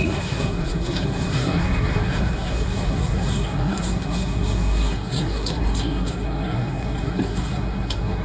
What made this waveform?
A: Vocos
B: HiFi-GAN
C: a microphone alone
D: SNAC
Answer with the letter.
D